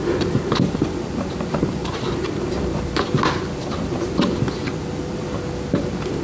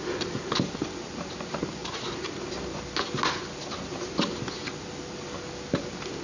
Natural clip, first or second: second